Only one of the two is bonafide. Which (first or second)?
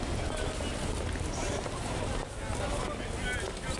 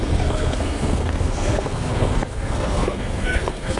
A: first